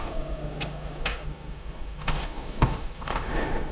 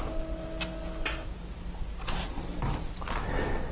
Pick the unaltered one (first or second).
second